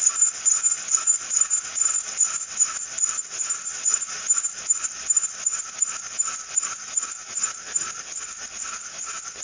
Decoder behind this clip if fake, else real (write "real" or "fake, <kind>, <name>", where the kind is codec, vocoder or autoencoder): real